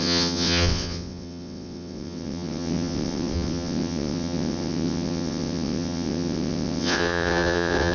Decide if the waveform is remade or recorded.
remade